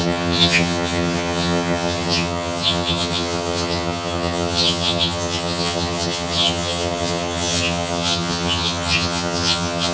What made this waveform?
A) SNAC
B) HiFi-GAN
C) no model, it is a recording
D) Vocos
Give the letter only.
B